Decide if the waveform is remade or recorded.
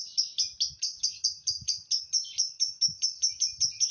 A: recorded